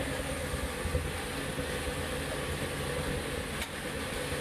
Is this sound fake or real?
real